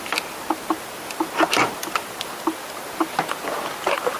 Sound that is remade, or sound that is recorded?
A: recorded